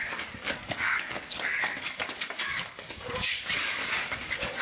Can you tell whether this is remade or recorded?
remade